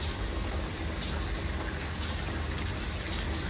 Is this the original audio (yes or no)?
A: yes